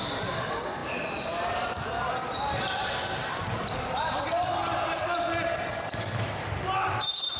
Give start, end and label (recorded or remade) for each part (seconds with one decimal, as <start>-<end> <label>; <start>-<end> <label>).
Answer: 0.0-7.4 recorded